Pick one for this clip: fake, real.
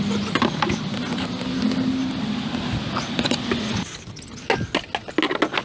real